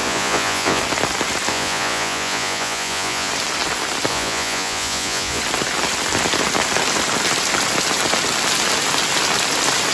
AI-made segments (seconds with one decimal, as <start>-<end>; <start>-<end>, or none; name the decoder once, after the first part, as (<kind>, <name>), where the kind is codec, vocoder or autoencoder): 0.0-0.8 (vocoder, Vocos); 1.5-3.3; 4.1-5.4